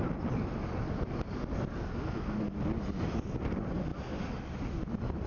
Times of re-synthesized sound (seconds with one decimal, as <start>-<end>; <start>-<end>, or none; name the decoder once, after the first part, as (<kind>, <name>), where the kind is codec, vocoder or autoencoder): none